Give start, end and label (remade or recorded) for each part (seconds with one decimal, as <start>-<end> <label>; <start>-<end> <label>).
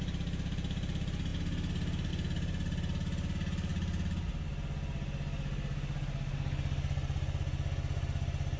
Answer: 0.0-8.6 recorded